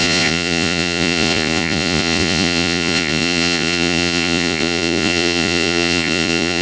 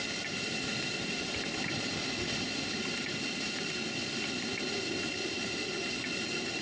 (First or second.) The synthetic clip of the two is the first